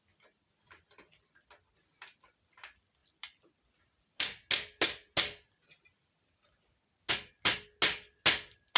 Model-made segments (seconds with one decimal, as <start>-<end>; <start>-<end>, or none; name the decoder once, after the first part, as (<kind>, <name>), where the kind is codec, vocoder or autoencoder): none